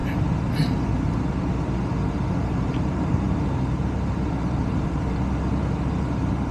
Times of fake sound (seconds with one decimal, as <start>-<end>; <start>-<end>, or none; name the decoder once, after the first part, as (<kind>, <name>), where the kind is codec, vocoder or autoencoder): 0.0-0.5 (vocoder, BigVGAN v2); 0.9-1.5; 2.4-5.1